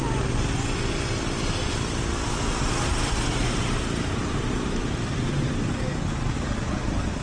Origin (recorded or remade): recorded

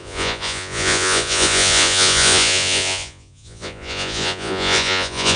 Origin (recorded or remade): remade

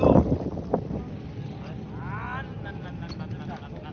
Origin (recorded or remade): recorded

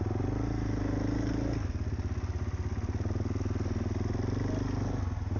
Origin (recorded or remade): recorded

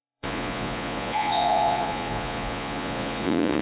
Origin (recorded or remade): remade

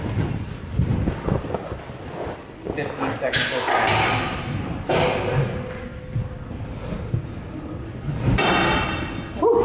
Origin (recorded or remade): recorded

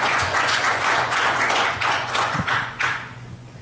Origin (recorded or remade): remade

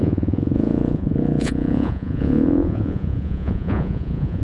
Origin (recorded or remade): remade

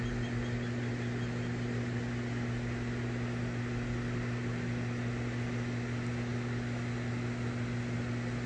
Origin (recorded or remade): recorded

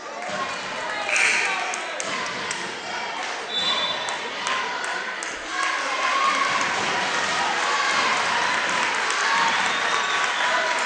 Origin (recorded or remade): recorded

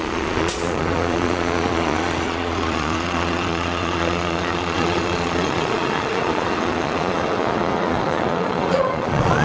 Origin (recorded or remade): remade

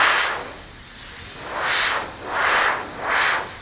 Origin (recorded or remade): recorded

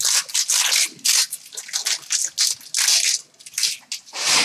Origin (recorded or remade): recorded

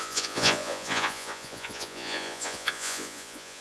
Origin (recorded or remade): remade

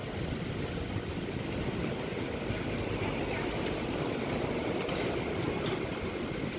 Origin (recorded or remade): recorded